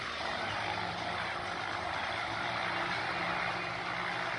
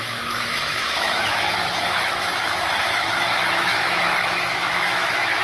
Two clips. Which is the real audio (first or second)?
first